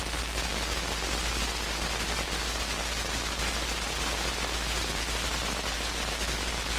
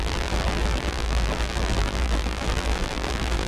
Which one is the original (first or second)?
first